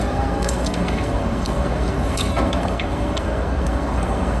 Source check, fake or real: fake